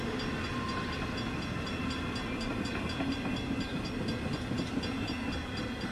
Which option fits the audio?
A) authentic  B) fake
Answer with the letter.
A